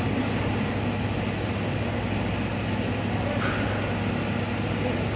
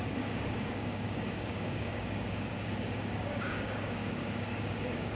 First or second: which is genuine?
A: first